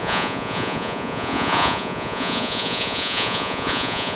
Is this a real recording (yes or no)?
no